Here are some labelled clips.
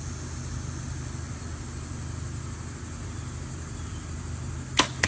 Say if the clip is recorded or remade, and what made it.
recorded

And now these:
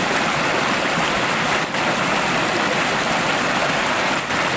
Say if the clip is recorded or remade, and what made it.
recorded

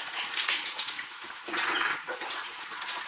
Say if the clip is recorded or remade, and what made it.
remade, vocoder, Vocos